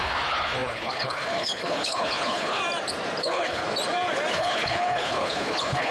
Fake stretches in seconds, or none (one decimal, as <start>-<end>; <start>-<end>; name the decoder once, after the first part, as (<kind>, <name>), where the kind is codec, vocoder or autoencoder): 0.0-2.6 (codec, HILCodec); 3.2-3.6; 4.3-5.9